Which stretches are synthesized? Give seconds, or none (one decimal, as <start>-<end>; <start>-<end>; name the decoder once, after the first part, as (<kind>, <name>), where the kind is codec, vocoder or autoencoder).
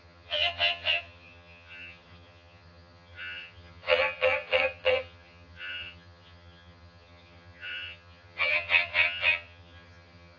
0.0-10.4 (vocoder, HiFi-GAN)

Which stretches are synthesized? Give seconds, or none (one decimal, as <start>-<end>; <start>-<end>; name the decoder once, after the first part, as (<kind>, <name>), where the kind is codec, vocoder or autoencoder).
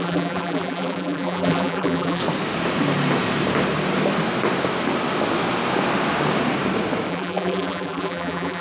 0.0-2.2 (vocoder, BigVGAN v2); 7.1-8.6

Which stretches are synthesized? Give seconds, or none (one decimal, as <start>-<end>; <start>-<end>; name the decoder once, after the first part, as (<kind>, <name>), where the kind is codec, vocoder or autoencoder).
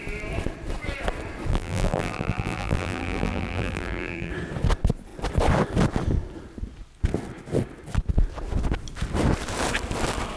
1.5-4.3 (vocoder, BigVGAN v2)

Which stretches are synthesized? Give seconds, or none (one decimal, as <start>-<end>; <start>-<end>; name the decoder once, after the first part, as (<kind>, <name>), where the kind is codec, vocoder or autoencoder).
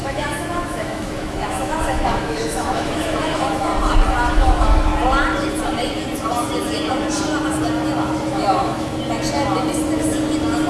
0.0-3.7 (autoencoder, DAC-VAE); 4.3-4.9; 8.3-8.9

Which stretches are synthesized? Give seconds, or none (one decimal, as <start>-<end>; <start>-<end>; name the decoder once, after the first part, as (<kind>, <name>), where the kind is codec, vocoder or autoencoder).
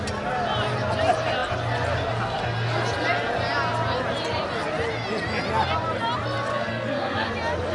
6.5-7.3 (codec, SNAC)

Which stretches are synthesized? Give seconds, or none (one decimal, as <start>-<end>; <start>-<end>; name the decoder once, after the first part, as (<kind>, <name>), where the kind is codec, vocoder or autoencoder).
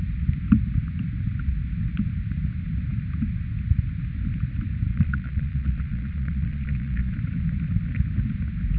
4.9-7.1 (vocoder, Vocos)